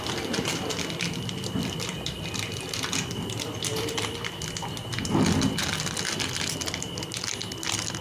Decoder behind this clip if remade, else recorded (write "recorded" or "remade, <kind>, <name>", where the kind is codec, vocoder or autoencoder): recorded